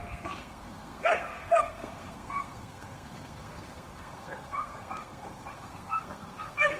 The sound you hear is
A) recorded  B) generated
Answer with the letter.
B